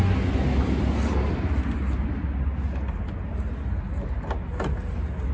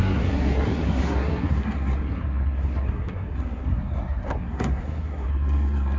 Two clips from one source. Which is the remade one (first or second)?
second